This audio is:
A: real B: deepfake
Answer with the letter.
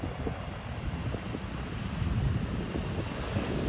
A